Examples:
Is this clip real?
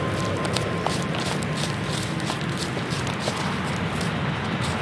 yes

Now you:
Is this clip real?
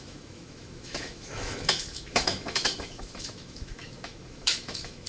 no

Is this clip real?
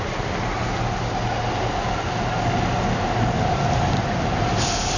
yes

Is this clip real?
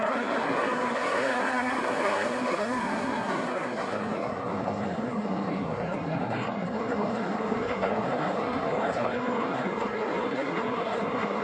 no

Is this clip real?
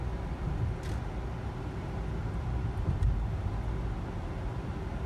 yes